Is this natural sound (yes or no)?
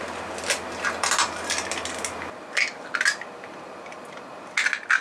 yes